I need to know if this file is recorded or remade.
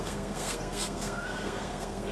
remade